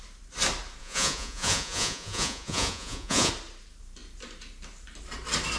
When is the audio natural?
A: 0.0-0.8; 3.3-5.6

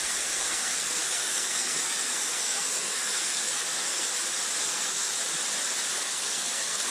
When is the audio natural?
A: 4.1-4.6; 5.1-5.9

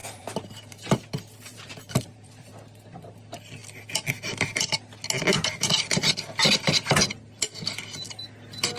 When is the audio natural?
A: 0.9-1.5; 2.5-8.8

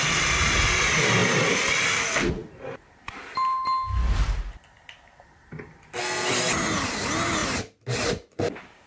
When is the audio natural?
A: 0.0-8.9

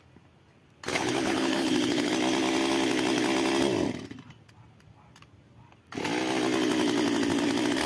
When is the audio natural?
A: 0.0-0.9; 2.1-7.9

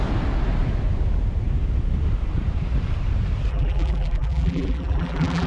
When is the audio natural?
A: 0.0-3.5